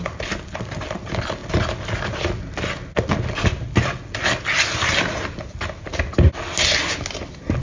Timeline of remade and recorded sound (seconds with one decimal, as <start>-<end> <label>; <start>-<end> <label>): 0.0-7.6 recorded